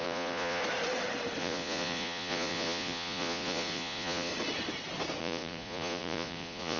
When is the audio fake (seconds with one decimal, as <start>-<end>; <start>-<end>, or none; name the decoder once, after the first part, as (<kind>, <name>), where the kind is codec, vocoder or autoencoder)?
0.0-0.6 (vocoder, Vocos); 1.4-4.3; 5.2-6.8